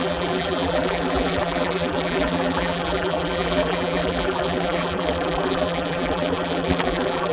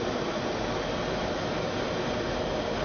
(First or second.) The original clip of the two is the second